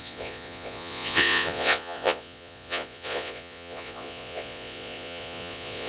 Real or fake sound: fake